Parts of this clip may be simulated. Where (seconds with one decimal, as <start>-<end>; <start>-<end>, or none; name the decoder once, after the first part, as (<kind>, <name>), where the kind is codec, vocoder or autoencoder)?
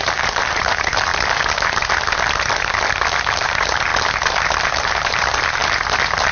0.0-1.1 (vocoder, BigVGAN v2); 3.2-3.9; 4.6-5.6